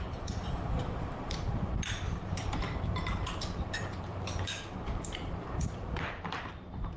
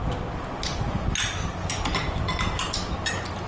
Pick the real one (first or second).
second